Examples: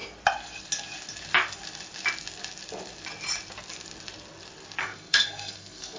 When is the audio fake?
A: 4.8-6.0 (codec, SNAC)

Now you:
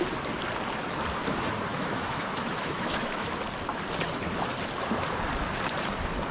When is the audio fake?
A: 1.7-3.3 (autoencoder, DAC-VAE)

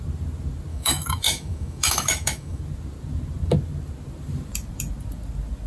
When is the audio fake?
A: 0.7-2.6 (autoencoder, DAC-VAE)

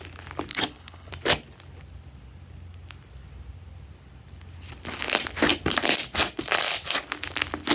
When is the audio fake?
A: 0.5-1.1 (codec, HILCodec)

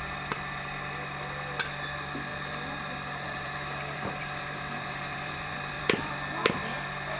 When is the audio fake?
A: 2.3-6.3 (vocoder, BigVGAN v2)

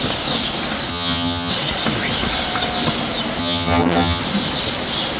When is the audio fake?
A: 0.9-1.5 (vocoder, HiFi-GAN); 3.4-4.2

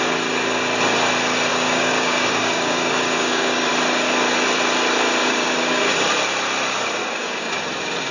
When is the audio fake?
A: 1.5-3.7 (codec, DAC); 5.2-6.1; 7.0-7.6

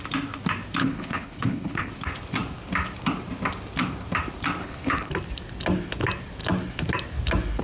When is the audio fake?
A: 0.8-1.9 (codec, HILCodec); 4.6-5.1